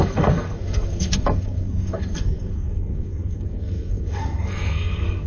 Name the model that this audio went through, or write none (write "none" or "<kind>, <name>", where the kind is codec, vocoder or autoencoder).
codec, SNAC